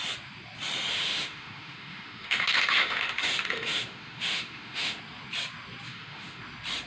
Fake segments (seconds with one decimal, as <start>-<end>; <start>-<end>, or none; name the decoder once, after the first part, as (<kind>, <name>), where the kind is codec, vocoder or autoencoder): 0.9-5.0 (autoencoder, DAC-VAE); 5.9-6.4